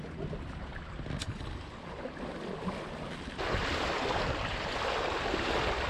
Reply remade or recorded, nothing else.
recorded